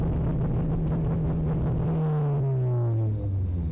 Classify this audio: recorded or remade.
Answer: recorded